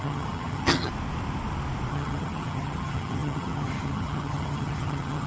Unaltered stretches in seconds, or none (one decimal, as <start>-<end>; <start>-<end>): 0.9-1.9